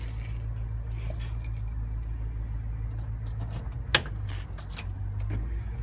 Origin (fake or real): real